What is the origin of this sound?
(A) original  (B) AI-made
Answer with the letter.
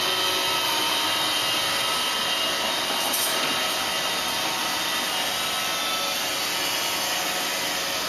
A